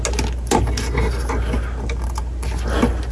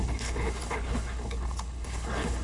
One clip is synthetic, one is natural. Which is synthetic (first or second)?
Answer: second